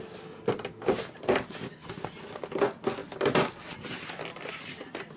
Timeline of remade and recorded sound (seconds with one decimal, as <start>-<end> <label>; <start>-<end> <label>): 0.0-5.2 recorded